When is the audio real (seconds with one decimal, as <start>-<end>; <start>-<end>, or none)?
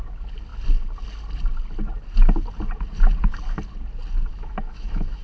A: 0.0-4.3